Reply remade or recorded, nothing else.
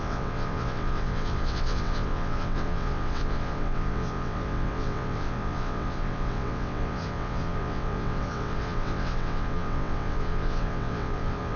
remade